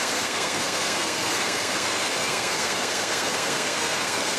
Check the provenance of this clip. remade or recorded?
remade